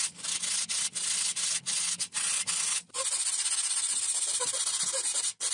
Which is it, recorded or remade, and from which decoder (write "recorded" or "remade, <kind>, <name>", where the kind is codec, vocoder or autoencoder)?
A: recorded